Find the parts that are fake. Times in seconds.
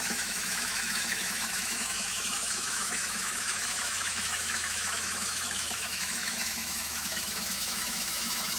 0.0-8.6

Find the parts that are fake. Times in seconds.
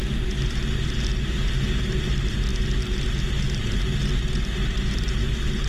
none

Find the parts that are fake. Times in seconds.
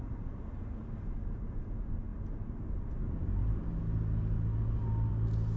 none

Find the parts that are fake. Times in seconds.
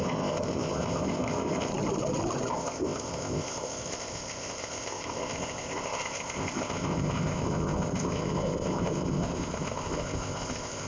0.0-1.7; 2.5-10.9